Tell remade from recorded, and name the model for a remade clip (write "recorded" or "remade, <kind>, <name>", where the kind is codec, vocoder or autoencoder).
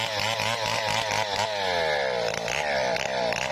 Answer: recorded